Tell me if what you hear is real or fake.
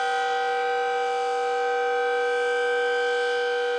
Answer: real